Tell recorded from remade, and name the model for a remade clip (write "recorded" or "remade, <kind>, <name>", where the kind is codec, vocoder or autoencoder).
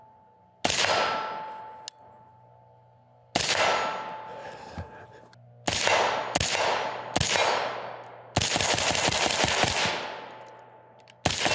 recorded